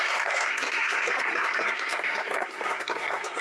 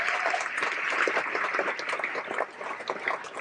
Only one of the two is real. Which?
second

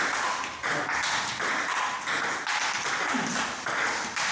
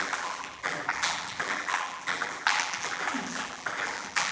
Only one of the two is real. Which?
first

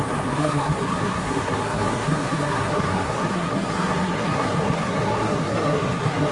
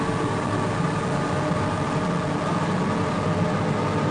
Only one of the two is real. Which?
second